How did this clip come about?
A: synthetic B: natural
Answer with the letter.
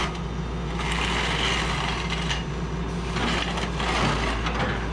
B